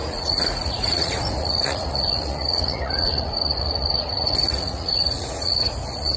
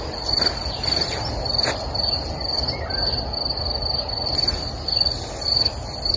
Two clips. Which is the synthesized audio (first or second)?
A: first